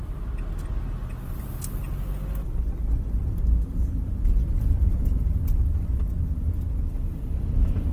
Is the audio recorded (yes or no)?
yes